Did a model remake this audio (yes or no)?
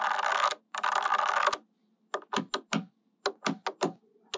no